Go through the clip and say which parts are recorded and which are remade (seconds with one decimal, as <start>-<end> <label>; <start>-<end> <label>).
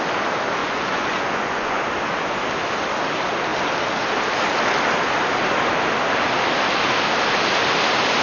0.0-0.6 recorded; 0.6-1.8 remade; 1.8-8.2 recorded